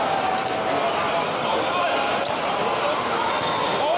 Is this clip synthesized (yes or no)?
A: no